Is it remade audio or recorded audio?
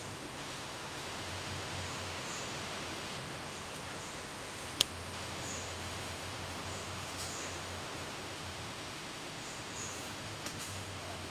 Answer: remade